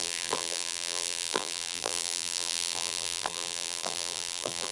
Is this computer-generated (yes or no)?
yes